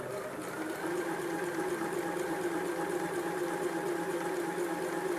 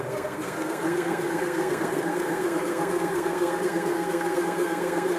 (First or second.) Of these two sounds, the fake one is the second